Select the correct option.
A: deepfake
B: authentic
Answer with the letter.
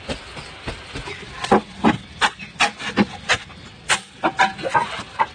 B